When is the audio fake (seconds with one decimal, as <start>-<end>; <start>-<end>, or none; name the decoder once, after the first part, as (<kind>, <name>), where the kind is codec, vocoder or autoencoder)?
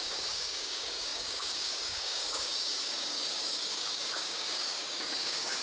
0.0-5.6 (codec, DAC)